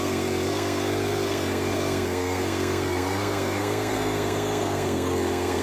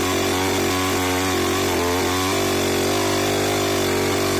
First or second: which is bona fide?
second